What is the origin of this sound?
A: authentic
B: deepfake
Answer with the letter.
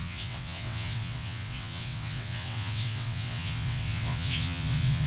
B